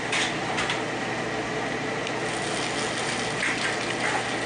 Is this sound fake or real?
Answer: real